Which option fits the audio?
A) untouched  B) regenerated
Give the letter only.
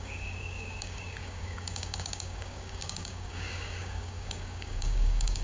B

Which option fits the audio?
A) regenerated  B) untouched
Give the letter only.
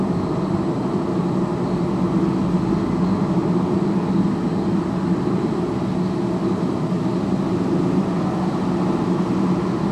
B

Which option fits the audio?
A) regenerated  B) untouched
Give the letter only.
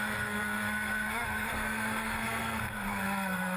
A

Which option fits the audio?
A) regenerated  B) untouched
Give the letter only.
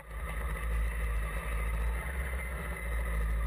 B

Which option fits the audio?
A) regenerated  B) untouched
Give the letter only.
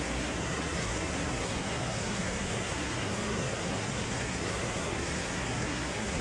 A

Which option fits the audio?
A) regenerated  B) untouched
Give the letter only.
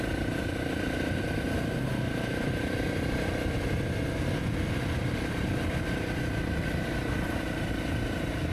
B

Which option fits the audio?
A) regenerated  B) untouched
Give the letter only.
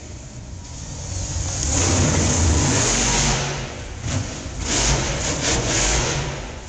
A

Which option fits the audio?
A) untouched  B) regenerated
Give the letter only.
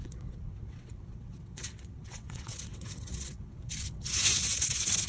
B